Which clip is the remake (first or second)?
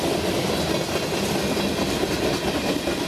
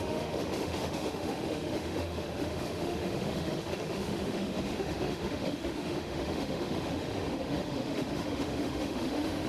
second